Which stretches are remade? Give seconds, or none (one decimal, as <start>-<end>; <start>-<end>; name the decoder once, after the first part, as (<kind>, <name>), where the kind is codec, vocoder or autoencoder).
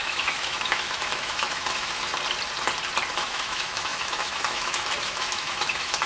0.0-2.1 (autoencoder, DAC-VAE); 3.1-6.1